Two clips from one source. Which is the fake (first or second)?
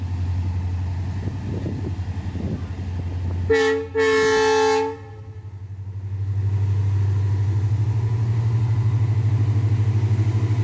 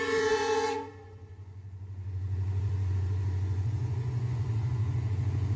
second